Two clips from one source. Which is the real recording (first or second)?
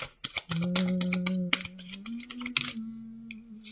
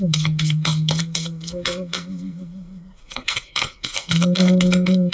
first